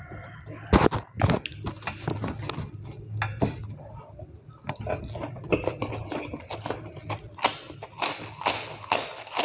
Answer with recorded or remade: recorded